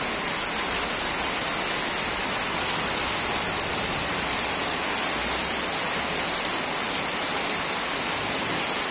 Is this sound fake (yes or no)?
no